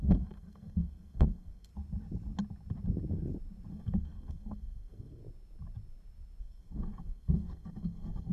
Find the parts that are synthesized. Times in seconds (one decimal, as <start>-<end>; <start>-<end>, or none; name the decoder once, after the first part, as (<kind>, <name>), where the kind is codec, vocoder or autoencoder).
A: 0.0-1.7 (codec, SNAC); 3.7-5.2; 6.4-8.3